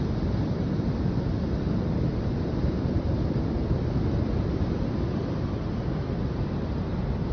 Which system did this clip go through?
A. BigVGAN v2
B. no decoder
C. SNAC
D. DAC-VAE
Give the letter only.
B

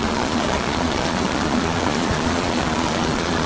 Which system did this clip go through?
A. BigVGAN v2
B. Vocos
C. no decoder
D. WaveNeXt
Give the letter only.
B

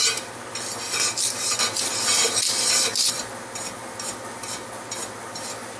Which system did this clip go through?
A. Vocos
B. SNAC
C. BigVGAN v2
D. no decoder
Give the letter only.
D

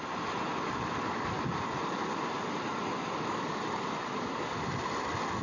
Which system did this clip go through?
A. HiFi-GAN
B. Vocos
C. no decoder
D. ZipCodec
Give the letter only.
C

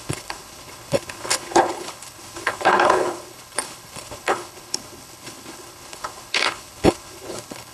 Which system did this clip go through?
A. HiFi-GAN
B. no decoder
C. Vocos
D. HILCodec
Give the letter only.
D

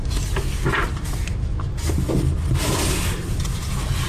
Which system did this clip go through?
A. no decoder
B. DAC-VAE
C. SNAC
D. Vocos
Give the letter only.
A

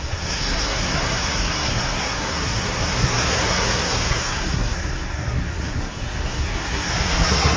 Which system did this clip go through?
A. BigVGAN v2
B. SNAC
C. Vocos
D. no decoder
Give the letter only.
B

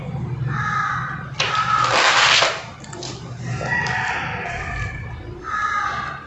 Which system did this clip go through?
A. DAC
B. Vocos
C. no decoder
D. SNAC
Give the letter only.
C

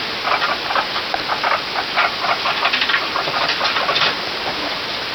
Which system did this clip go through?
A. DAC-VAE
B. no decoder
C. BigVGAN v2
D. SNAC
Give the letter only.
B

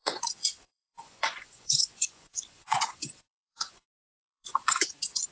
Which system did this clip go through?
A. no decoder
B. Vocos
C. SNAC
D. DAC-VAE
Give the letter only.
B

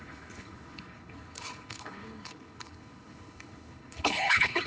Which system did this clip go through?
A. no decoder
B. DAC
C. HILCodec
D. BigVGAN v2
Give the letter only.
C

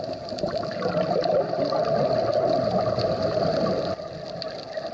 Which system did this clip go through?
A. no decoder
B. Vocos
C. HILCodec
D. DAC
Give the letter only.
A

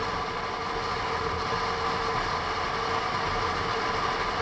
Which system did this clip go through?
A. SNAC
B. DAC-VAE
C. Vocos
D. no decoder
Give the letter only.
D